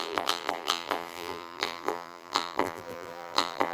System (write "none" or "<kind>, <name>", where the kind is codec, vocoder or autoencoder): vocoder, BigVGAN v2